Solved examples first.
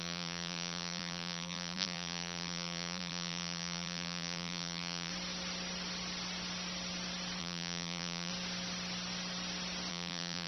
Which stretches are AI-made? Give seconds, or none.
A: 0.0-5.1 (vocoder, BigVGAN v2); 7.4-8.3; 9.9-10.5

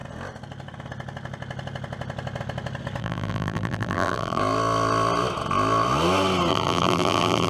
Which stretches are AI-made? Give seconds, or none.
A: 3.0-4.4 (vocoder, BigVGAN v2); 6.5-7.5

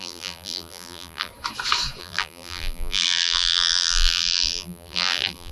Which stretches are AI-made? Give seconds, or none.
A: 0.0-1.3 (vocoder, BigVGAN v2); 2.0-5.5

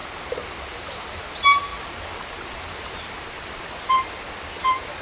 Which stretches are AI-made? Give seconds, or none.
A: 0.0-1.2 (vocoder, BigVGAN v2); 1.7-5.0